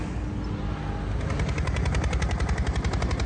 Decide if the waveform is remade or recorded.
recorded